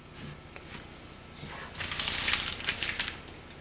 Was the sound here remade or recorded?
recorded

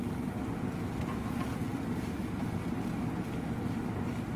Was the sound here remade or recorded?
recorded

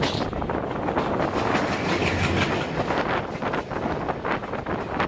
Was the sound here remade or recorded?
recorded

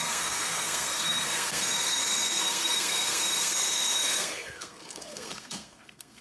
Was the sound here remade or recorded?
remade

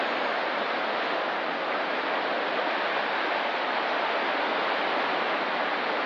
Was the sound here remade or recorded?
recorded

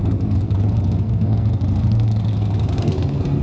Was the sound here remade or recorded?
remade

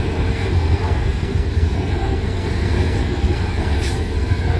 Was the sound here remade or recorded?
remade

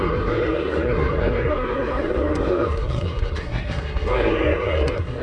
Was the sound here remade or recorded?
remade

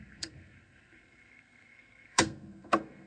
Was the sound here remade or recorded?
remade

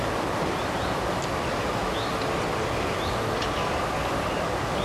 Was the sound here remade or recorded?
recorded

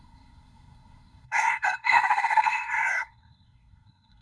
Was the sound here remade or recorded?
remade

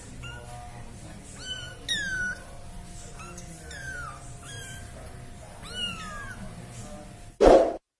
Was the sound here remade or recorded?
recorded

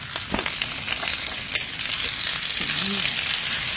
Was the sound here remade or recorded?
recorded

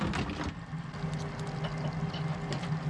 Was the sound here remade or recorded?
recorded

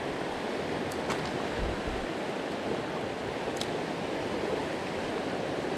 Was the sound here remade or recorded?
recorded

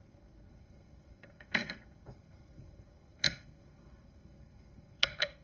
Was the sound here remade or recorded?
remade